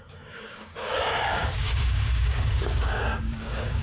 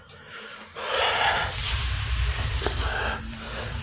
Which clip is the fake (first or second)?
first